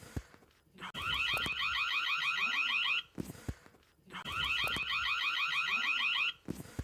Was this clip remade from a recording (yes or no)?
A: no